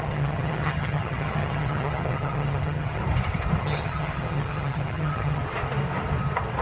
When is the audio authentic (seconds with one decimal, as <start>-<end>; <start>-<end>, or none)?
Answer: 3.0-3.6; 5.4-6.6